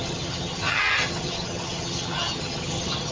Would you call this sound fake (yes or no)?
yes